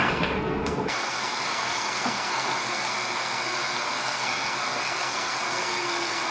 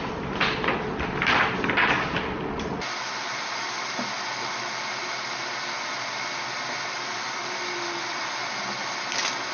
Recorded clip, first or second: second